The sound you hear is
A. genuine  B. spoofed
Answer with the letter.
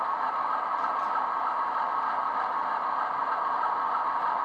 A